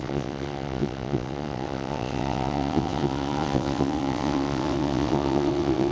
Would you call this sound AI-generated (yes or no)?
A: yes